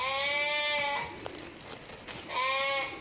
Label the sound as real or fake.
real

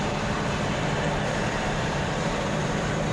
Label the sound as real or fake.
fake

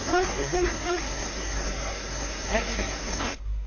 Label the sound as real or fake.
fake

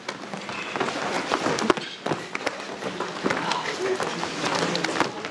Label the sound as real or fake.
real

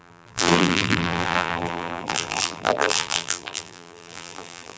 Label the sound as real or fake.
fake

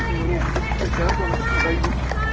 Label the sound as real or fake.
real